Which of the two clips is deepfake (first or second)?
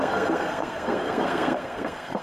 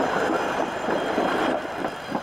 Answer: first